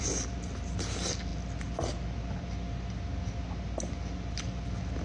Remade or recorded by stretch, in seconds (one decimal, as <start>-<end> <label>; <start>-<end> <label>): 0.0-5.0 recorded